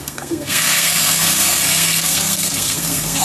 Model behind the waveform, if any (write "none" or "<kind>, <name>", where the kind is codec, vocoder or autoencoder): codec, SNAC